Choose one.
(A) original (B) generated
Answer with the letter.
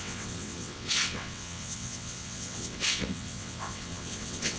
B